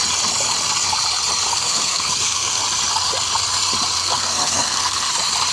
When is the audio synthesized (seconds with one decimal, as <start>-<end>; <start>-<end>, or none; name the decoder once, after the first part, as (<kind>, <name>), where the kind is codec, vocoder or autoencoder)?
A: 1.5-2.6 (codec, SNAC); 4.0-5.1